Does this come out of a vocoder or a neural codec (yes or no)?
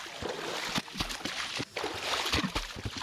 no